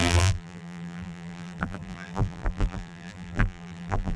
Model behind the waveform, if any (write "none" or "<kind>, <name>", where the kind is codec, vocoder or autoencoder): vocoder, BigVGAN v2